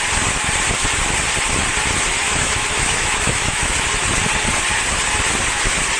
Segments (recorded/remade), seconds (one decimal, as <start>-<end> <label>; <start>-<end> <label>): 0.0-2.2 recorded; 2.2-3.7 remade; 3.7-6.0 recorded